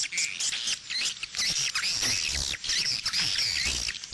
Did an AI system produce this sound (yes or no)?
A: no